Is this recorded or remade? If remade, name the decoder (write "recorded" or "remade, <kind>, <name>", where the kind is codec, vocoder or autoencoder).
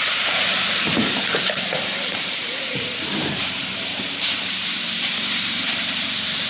remade, vocoder, BigVGAN v2